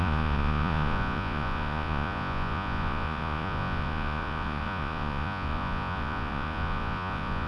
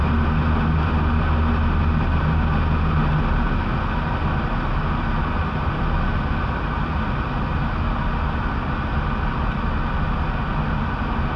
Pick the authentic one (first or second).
second